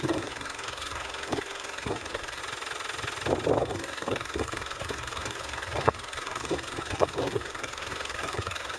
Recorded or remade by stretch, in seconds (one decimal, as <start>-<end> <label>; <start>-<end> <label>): 0.0-2.4 remade; 2.4-3.6 recorded; 3.6-8.8 remade